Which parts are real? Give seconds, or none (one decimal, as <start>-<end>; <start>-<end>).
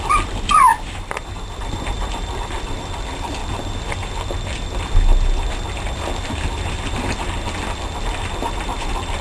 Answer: 0.0-0.7; 1.7-9.2